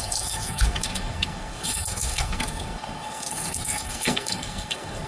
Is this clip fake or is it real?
fake